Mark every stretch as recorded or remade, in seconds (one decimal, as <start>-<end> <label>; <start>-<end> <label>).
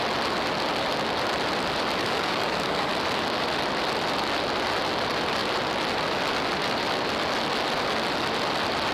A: 0.0-2.0 recorded; 2.0-2.9 remade; 2.9-8.9 recorded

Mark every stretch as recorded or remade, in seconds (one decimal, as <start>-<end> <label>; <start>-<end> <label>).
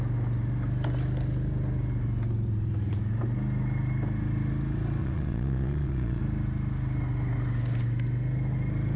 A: 0.0-5.0 recorded; 5.0-6.2 remade; 6.2-9.0 recorded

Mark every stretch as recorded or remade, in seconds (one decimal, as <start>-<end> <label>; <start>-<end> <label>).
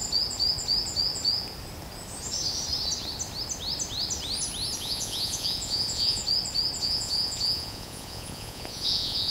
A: 0.0-4.8 recorded; 4.8-6.2 remade; 6.2-6.8 recorded; 6.8-9.3 remade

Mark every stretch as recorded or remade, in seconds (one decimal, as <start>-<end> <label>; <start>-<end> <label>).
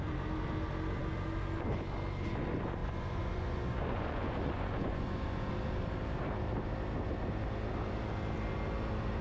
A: 0.0-2.8 recorded; 2.8-5.5 remade; 5.5-9.2 recorded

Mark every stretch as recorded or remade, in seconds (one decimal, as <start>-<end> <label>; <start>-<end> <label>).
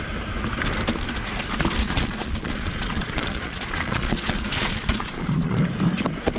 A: 0.0-1.8 recorded; 1.8-5.6 remade; 5.6-6.4 recorded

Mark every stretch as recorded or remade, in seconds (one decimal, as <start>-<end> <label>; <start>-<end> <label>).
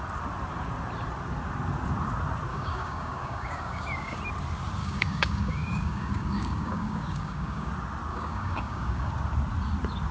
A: 0.0-2.5 recorded; 2.5-4.2 remade; 4.2-4.8 recorded; 4.8-7.7 remade; 7.7-8.1 recorded; 8.1-9.1 remade; 9.1-10.1 recorded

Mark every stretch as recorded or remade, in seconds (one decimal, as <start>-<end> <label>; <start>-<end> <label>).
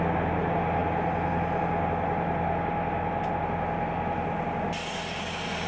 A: 0.0-5.7 recorded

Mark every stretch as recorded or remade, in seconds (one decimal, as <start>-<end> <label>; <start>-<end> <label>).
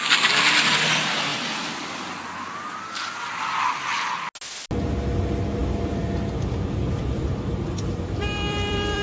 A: 0.0-1.3 recorded; 1.3-2.2 remade; 2.2-5.6 recorded; 5.6-9.0 remade